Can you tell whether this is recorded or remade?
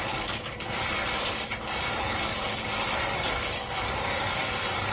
remade